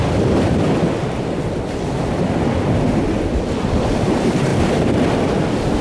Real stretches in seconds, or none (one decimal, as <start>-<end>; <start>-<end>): 0.6-3.9; 4.5-5.8